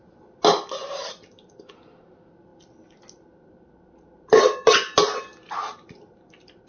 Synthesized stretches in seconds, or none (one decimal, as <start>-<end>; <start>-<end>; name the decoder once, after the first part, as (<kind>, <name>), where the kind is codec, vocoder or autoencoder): none